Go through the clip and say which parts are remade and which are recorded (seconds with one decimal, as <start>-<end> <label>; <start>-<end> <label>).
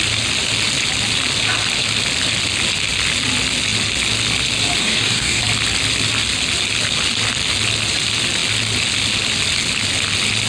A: 0.0-4.8 recorded; 4.8-5.4 remade; 5.4-10.5 recorded